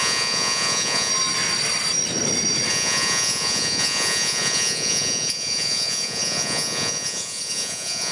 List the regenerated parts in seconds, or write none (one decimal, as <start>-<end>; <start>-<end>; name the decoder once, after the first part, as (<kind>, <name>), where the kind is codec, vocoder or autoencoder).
0.0-1.1 (vocoder, Vocos); 2.7-8.1